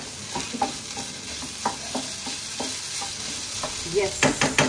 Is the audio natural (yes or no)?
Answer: yes